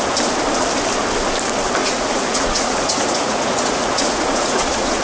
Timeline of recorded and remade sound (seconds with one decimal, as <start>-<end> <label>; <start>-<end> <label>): 0.0-1.8 recorded; 1.8-5.0 remade